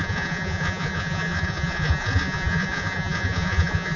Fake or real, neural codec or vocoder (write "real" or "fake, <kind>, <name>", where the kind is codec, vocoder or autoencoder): fake, vocoder, Vocos